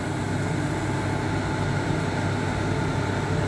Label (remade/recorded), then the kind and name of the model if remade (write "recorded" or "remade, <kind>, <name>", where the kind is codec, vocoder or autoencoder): recorded